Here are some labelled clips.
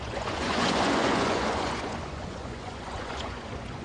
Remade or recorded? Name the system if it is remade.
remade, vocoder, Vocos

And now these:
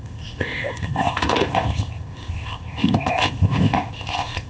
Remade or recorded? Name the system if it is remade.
remade, codec, ZipCodec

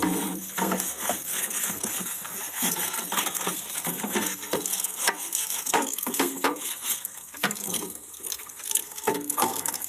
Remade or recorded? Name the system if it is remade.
remade, codec, SNAC